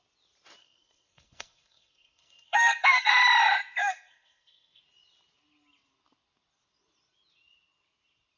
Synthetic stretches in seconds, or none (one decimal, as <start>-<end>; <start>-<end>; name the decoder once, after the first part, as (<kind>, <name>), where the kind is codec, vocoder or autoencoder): 0.6-3.1 (codec, SNAC); 3.8-4.8